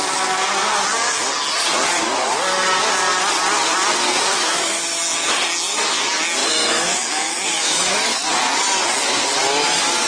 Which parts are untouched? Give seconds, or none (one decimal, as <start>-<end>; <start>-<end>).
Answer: 0.0-4.3; 5.0-6.4; 8.4-10.1